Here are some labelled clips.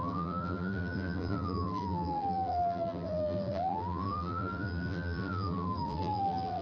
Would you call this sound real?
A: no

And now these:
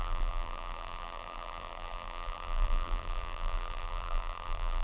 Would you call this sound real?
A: no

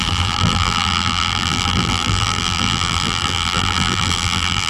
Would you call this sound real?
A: no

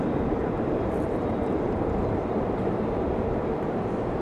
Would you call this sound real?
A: no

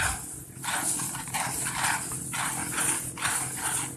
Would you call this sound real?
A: yes